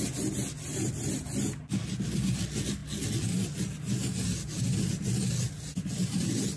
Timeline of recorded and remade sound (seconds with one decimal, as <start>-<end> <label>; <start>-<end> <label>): 0.0-6.6 recorded